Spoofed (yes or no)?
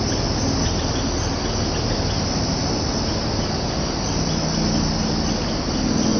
no